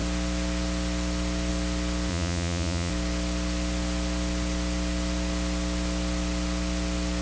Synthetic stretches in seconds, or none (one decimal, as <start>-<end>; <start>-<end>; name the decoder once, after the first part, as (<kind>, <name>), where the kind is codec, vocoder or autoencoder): 2.1-2.9 (vocoder, Vocos)